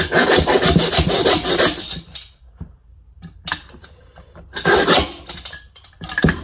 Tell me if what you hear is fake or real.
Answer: real